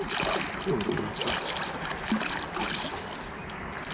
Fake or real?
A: real